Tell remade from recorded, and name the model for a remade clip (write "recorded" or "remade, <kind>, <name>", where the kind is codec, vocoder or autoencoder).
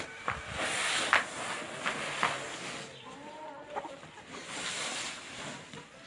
recorded